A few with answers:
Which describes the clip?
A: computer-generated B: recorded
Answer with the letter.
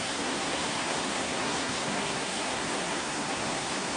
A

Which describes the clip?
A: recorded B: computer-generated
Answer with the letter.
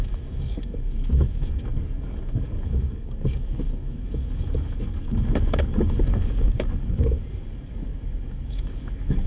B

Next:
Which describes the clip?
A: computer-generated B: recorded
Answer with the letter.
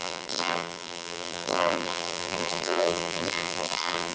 A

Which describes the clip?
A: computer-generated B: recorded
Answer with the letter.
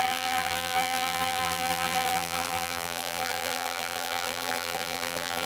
A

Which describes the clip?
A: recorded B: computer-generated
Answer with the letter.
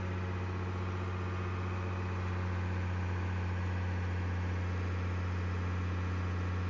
A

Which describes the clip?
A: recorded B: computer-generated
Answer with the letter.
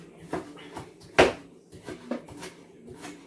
A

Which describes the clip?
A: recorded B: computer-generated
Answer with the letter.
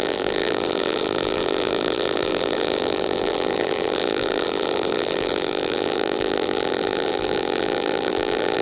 B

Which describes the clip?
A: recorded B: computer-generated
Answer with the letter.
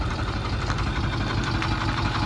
A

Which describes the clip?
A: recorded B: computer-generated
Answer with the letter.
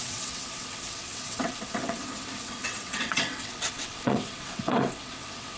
B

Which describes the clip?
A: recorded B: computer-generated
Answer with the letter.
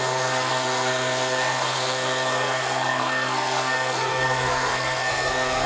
B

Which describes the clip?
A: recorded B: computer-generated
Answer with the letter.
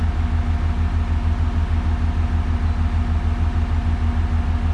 A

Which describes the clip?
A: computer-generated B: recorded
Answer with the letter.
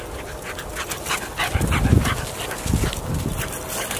B